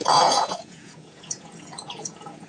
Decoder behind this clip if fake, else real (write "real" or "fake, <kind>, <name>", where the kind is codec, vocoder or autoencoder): fake, vocoder, Vocos